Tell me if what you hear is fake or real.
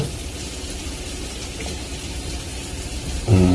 fake